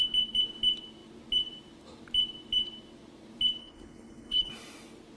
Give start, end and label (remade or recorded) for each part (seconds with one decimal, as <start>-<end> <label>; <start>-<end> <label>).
0.0-3.6 recorded; 3.6-4.5 remade; 4.5-5.2 recorded